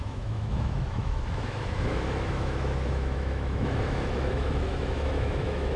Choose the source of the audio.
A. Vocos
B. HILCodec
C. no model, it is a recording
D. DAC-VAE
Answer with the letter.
D